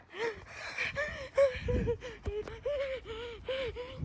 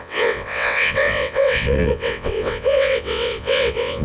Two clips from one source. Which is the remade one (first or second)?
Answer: second